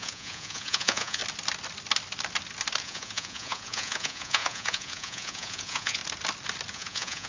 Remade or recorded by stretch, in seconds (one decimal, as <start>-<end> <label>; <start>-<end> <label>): 0.0-1.2 remade; 1.2-2.8 recorded; 2.8-6.0 remade; 6.0-6.7 recorded; 6.7-7.3 remade